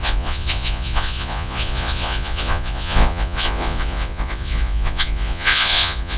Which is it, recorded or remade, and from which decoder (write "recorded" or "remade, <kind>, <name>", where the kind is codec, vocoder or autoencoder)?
remade, vocoder, Vocos